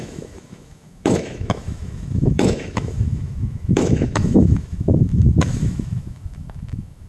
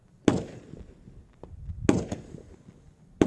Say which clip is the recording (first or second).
second